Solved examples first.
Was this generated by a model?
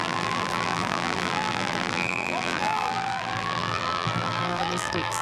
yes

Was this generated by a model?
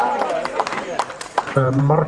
yes